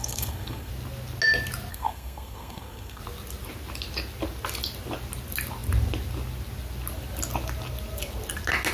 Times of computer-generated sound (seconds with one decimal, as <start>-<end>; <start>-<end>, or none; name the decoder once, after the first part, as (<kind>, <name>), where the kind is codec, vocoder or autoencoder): 0.0-0.7 (codec, SNAC); 1.7-3.0